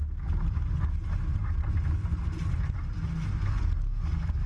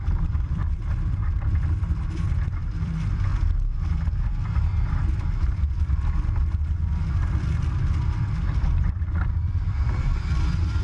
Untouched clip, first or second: first